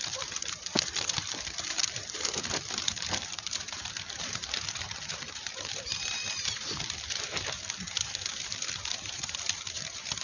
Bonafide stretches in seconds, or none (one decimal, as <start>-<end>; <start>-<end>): none